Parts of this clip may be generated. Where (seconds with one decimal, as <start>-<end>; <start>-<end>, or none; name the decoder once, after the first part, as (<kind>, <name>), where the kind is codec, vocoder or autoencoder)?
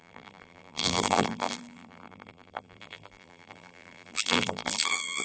0.0-5.2 (vocoder, BigVGAN v2)